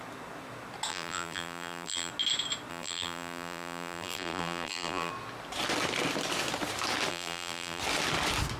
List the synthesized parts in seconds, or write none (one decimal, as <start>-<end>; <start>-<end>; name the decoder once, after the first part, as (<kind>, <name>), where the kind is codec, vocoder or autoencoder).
0.9-2.1 (vocoder, BigVGAN v2); 2.7-5.1; 7.1-7.8